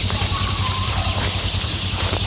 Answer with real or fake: real